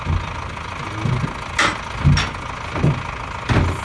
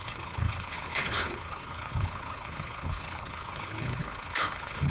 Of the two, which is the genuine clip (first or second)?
first